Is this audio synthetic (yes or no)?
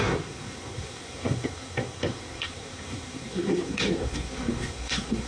yes